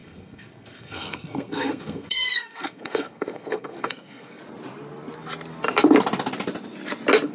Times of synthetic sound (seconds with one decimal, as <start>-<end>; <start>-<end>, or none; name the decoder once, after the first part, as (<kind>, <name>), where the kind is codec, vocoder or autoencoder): 0.0-4.4 (codec, SNAC)